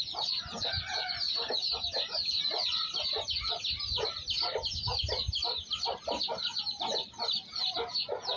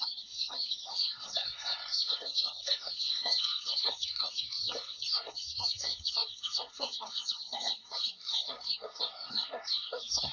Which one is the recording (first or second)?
first